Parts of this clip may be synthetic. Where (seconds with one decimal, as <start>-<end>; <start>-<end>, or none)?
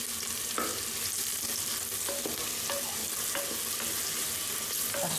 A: none